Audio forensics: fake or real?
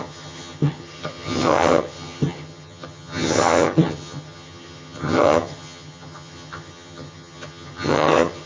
fake